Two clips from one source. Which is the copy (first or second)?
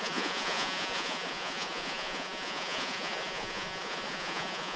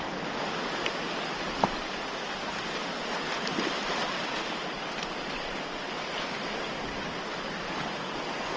first